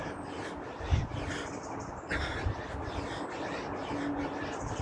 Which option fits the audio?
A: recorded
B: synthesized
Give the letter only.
A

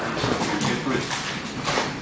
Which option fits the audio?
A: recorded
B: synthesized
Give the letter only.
A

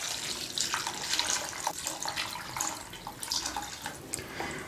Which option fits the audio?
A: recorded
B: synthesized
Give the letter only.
A